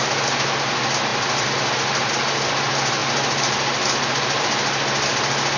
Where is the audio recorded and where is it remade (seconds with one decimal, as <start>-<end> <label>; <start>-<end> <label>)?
0.0-1.1 recorded; 1.1-2.1 remade; 2.1-3.0 recorded; 3.0-4.1 remade; 4.1-5.6 recorded